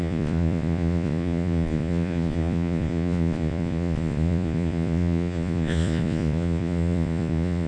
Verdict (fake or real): fake